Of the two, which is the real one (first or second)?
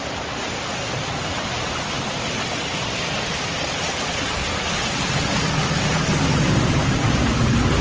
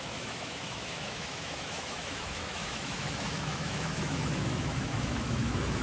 first